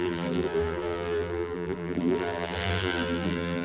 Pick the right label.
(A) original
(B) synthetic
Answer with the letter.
B